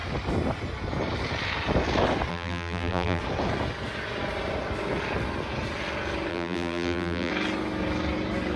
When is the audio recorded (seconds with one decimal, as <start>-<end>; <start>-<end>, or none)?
0.0-2.3; 3.2-6.3; 7.3-8.6